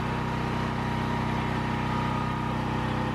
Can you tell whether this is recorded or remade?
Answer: recorded